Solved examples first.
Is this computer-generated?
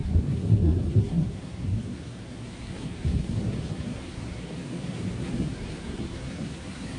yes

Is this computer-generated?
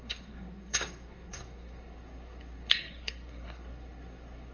yes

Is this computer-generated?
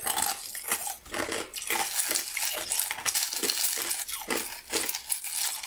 no